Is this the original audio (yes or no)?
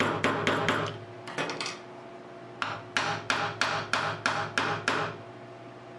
yes